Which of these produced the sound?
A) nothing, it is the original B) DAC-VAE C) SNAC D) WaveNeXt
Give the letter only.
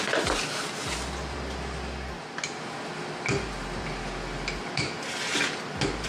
A